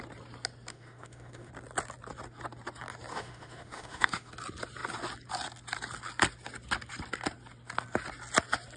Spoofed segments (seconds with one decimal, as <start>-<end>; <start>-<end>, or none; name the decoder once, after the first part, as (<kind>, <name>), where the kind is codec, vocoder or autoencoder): 0.7-1.5 (autoencoder, DAC-VAE); 3.1-4.3